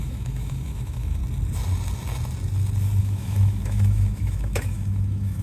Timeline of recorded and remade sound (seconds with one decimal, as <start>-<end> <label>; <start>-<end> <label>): 0.0-1.2 remade; 1.2-3.0 recorded; 3.0-5.4 remade